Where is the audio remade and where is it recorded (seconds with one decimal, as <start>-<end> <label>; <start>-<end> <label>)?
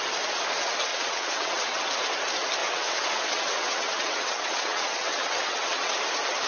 0.0-0.9 recorded; 0.9-1.8 remade; 1.8-2.6 recorded; 2.6-6.0 remade; 6.0-6.5 recorded